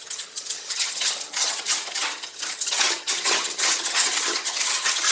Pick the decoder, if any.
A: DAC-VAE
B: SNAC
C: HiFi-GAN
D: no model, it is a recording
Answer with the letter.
C